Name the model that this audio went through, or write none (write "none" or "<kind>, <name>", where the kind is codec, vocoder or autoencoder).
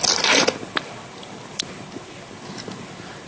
none